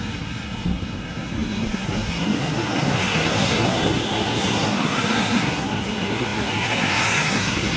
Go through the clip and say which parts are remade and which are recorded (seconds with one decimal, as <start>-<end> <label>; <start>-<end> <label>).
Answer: 0.0-7.8 remade